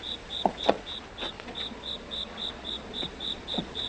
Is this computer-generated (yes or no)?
yes